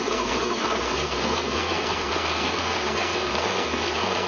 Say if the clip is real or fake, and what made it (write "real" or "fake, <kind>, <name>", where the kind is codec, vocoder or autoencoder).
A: fake, codec, SNAC